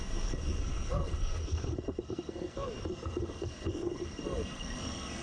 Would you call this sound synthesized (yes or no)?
yes